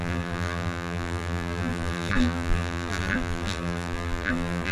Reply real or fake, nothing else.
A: fake